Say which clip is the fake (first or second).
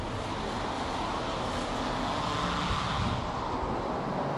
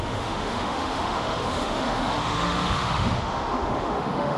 second